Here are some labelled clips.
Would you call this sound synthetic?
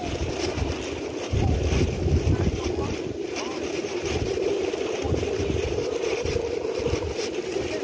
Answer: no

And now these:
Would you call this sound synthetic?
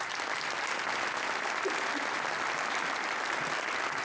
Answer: no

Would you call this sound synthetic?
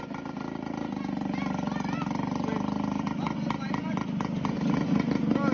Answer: no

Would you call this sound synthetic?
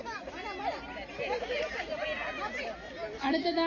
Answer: no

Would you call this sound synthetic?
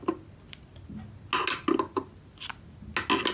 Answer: no